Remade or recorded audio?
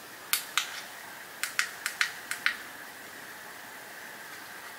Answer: recorded